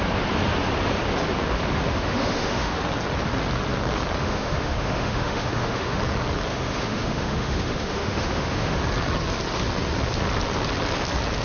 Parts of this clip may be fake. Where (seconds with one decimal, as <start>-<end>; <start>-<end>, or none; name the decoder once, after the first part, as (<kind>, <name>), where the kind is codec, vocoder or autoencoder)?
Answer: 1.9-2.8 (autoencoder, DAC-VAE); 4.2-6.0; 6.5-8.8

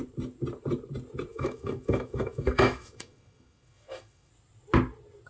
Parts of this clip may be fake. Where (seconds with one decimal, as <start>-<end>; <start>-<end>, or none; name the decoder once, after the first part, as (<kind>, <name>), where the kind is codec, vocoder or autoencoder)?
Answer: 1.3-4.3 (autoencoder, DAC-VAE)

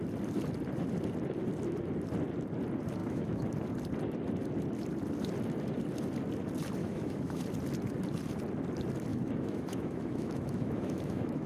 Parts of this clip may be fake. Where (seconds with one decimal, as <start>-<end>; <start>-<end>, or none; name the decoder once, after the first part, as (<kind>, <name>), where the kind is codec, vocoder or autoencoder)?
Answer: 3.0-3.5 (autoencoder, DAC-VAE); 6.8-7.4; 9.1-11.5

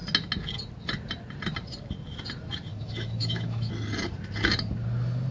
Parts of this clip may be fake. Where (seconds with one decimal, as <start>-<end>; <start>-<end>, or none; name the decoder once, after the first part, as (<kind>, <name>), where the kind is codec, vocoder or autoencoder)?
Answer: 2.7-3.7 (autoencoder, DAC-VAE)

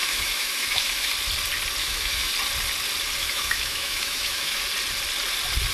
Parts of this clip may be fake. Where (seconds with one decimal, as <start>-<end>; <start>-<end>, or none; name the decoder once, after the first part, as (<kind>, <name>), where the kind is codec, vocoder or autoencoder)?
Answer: 0.0-1.1 (autoencoder, DAC-VAE); 1.8-2.3; 3.2-4.6

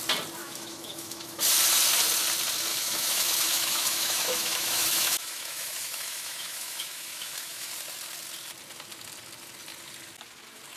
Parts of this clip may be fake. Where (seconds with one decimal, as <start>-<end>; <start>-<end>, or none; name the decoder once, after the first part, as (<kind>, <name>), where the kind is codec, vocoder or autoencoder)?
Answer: 0.4-1.4 (autoencoder, DAC-VAE); 2.7-7.7

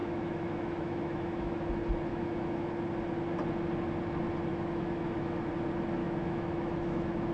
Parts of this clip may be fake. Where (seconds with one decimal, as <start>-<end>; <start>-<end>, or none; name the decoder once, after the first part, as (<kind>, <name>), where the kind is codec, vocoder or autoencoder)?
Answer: 0.0-1.6 (autoencoder, DAC-VAE); 2.1-2.7; 4.5-5.5; 6.0-7.3